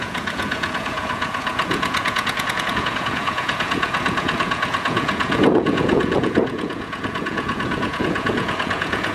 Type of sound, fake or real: fake